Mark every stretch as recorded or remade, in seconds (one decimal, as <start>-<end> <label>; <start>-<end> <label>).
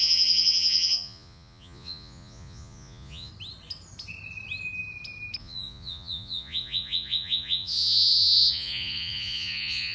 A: 0.0-3.3 remade; 3.3-5.4 recorded; 5.4-9.9 remade